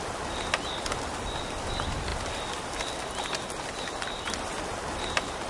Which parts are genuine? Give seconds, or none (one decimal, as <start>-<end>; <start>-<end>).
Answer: 0.0-5.5